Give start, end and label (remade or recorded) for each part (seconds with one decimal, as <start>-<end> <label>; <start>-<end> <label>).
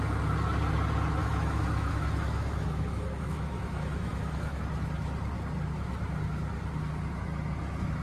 0.0-1.2 recorded; 1.2-4.6 remade; 4.6-8.0 recorded